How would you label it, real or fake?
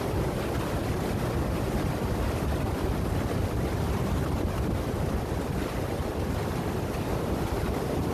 real